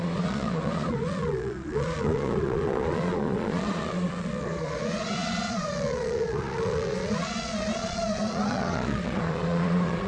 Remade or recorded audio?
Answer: remade